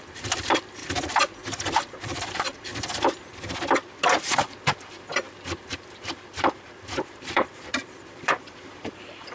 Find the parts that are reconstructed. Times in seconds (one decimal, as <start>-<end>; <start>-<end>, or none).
0.0-0.8; 1.8-2.7; 4.2-9.3